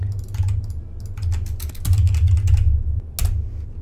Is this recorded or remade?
recorded